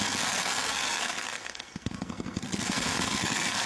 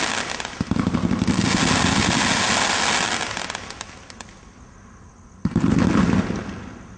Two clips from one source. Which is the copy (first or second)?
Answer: first